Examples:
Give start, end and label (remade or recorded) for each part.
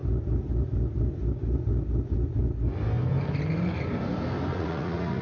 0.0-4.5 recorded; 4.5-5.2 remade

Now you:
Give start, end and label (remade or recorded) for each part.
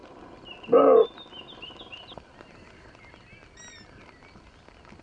0.0-5.0 recorded